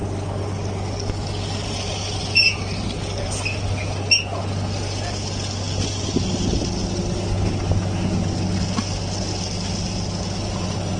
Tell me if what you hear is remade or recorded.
recorded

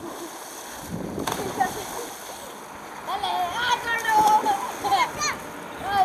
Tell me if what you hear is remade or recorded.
recorded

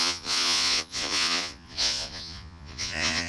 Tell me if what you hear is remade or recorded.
remade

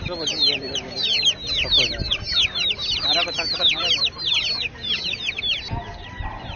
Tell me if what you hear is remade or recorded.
recorded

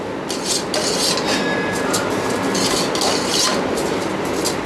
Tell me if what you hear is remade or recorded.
recorded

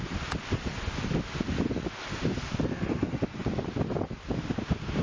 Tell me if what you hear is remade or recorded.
recorded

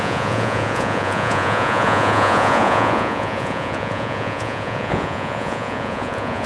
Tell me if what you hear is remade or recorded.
remade